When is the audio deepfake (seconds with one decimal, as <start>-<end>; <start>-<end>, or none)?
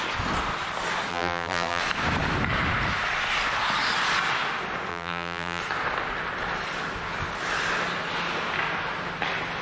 1.1-1.8; 4.9-5.6